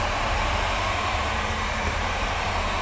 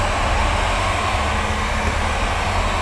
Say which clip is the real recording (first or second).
second